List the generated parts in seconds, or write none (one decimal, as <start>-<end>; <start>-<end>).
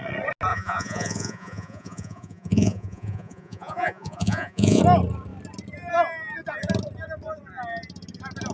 0.5-4.8